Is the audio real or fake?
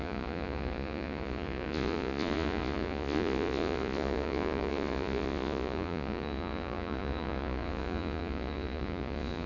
fake